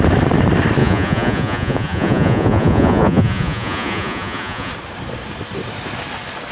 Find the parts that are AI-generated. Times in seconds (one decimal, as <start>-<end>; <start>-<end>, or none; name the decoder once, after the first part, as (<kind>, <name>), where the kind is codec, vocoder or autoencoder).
0.8-4.7 (vocoder, Vocos)